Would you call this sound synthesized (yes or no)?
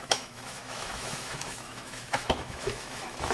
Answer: yes